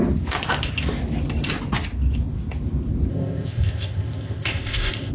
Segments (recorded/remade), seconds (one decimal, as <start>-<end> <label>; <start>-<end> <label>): 0.0-3.1 recorded; 3.1-5.1 remade